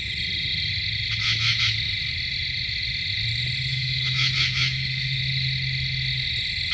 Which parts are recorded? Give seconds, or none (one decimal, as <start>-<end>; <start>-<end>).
0.0-3.7; 5.2-6.7